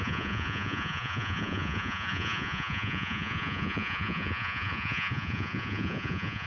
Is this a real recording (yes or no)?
no